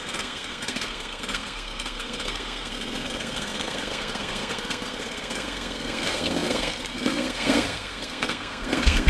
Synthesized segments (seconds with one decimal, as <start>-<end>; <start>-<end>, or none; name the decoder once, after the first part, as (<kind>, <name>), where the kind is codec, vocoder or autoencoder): 0.0-9.1 (codec, SNAC)